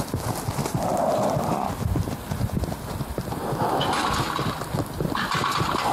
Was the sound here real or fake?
real